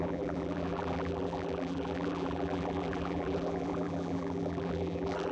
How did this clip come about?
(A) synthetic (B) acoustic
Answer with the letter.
A